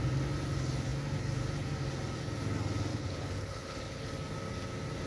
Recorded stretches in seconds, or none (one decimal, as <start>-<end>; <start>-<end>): 0.0-2.9; 4.1-5.1